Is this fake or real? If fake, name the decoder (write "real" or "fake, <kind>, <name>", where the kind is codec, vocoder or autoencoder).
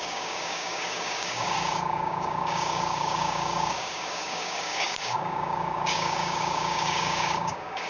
fake, codec, DAC